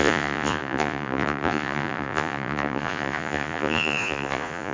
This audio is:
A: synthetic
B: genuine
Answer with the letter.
A